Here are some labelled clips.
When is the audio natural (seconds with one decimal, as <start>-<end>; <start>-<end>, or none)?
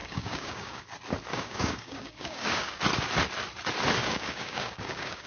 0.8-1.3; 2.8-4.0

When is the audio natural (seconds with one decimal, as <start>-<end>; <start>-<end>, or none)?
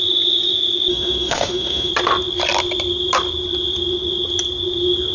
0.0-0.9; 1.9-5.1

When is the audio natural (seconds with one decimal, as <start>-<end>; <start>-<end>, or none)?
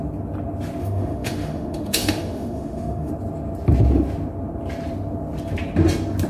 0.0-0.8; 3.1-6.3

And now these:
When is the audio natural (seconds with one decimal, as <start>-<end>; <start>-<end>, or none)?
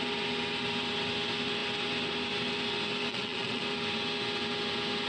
0.0-3.1; 3.6-5.1